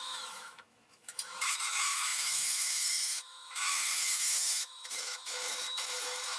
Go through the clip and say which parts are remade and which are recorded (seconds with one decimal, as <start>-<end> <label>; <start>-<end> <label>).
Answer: 0.0-6.4 remade